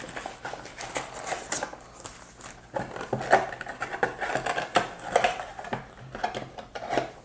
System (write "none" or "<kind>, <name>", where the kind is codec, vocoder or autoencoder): none